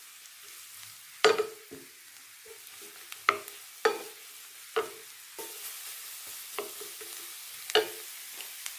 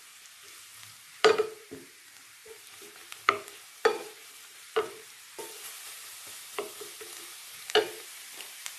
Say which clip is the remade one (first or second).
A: second